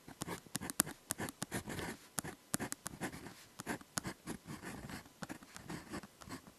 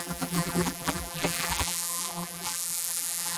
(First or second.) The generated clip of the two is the second